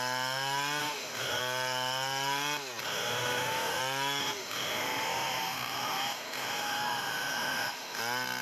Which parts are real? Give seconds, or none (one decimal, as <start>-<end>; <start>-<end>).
0.0-0.8; 1.4-2.8; 3.8-4.2; 8.0-8.4